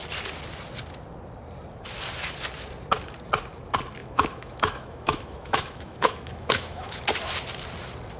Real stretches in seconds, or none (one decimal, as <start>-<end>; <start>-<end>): 0.0-4.0; 7.0-8.2